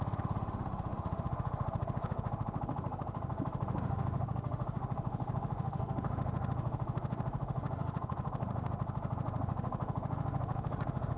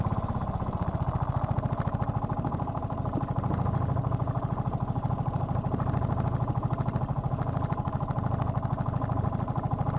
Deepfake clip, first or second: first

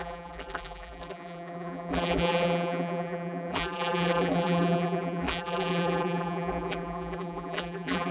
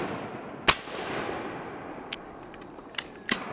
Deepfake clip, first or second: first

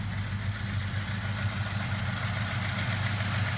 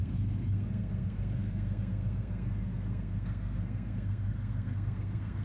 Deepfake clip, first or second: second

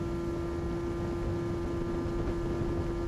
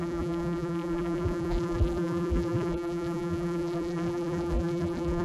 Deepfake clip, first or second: second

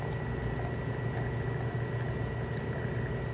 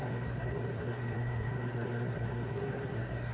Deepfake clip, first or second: second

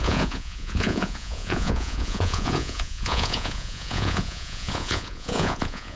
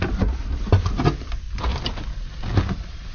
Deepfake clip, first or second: first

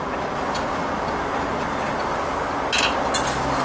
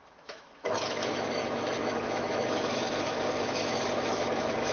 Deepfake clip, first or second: second